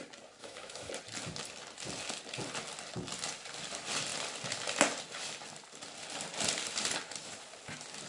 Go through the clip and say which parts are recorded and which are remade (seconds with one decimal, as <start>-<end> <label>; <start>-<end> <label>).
0.0-0.4 recorded; 0.4-0.9 remade; 0.9-8.1 recorded